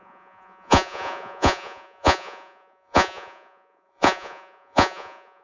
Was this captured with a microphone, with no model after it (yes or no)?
no